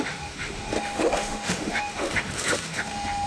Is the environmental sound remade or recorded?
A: remade